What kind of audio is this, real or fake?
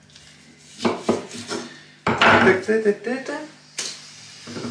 real